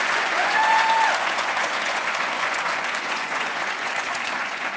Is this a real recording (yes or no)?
no